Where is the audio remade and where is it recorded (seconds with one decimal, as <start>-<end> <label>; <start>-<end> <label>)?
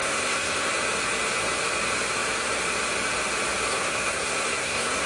0.0-0.7 remade; 0.7-3.7 recorded; 3.7-5.1 remade